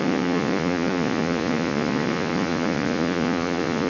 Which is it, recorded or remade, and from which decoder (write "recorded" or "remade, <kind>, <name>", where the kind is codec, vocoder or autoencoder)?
remade, vocoder, Vocos